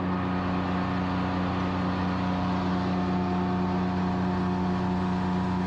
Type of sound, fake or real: real